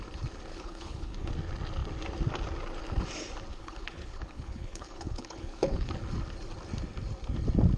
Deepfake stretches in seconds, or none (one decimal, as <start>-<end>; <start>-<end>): 0.5-1.3; 3.5-5.9